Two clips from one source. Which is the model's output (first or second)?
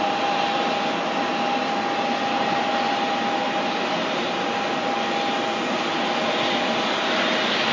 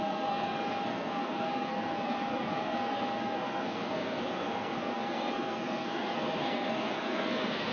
second